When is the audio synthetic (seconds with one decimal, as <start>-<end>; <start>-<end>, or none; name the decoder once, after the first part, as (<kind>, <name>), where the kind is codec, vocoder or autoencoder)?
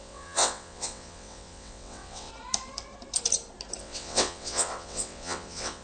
0.0-2.3 (vocoder, WaveNeXt); 3.8-5.8